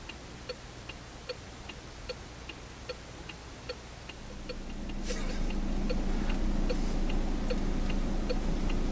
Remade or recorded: recorded